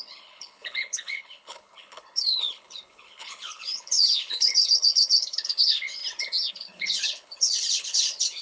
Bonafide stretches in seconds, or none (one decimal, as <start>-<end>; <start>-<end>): 6.0-6.5